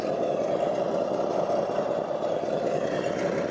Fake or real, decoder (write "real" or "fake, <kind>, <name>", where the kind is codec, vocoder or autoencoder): fake, vocoder, BigVGAN v2